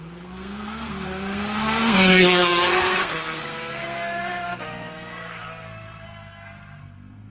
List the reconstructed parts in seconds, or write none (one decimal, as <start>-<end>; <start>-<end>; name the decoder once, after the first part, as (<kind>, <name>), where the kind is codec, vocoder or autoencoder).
0.0-7.3 (codec, SNAC)